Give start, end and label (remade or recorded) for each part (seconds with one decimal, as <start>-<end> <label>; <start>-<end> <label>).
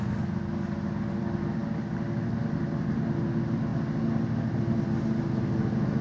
0.0-6.0 recorded